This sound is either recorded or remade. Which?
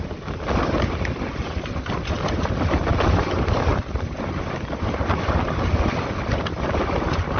recorded